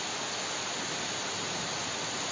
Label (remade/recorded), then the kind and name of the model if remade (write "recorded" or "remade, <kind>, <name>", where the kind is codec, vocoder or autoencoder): recorded